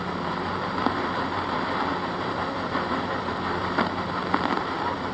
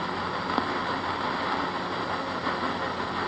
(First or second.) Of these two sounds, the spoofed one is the first